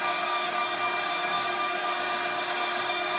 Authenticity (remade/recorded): remade